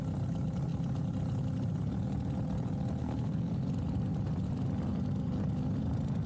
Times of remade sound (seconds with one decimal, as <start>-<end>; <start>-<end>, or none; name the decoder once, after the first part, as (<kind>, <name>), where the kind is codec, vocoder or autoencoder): 3.0-3.5 (codec, SNAC)